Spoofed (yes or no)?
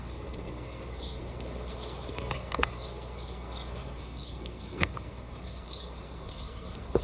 yes